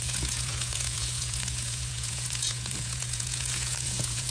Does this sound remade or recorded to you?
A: remade